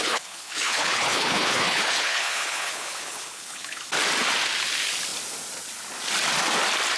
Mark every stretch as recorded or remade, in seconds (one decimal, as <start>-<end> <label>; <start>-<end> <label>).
0.0-3.8 remade; 3.8-7.0 recorded